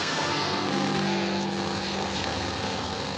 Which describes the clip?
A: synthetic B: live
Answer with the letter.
A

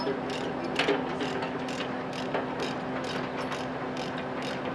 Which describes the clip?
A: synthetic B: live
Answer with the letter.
B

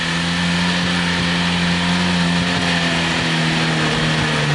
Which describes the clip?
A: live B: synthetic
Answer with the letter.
A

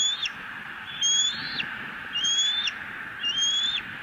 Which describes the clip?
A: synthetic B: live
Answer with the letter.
B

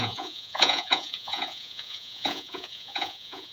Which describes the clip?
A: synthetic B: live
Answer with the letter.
A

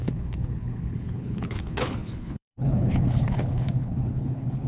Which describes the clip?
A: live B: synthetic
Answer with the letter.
B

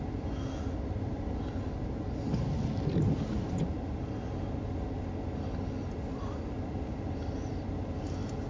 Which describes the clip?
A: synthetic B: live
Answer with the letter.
B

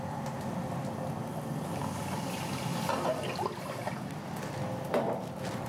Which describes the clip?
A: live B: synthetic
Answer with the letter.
A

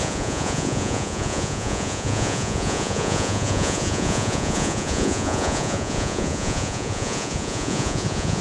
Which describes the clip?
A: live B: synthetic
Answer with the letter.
B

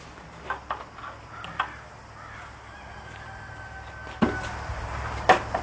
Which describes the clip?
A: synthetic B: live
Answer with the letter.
B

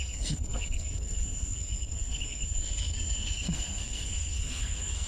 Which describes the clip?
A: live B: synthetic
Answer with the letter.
B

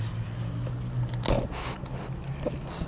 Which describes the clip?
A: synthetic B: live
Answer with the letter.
B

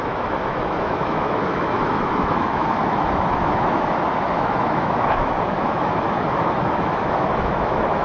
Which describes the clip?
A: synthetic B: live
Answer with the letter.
A